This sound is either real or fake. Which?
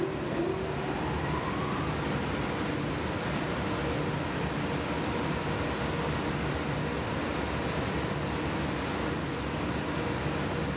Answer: real